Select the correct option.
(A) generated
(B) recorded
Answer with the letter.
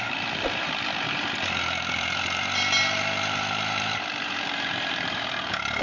A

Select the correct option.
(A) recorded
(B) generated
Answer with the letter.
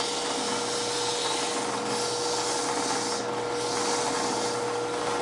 A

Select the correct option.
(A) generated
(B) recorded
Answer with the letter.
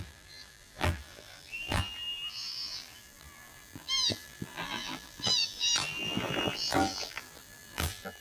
A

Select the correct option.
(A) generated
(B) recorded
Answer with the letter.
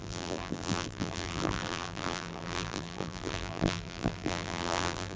A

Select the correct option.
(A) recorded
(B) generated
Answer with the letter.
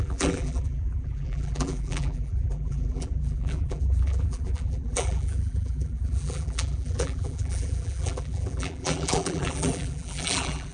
B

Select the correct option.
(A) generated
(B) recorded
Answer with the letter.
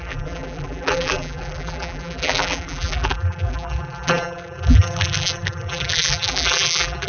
A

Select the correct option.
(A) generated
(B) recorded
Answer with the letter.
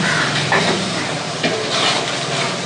A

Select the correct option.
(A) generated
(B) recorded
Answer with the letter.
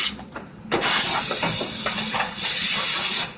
B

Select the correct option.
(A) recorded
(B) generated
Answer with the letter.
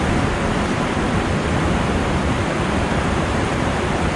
B